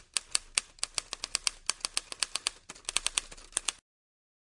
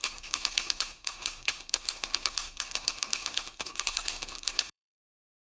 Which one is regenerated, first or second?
second